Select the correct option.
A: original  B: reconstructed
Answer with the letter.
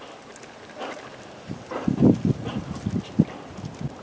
A